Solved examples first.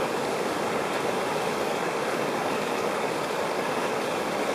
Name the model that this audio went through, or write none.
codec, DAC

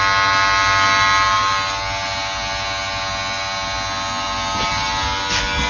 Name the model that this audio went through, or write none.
none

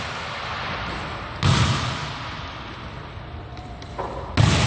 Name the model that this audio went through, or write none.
none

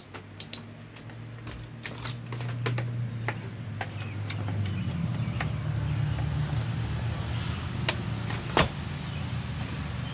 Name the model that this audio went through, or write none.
none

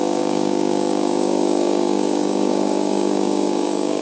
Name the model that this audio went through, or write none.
codec, DAC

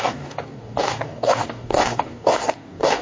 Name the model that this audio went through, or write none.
codec, DAC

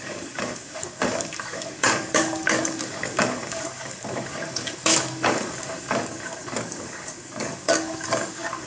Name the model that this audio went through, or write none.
codec, DAC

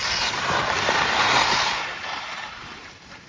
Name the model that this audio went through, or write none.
none